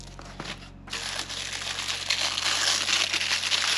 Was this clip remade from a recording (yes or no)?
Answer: no